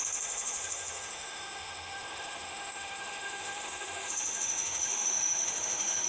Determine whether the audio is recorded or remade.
remade